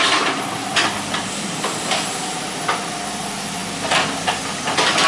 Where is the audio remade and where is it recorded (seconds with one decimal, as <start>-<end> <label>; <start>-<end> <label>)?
0.0-5.1 recorded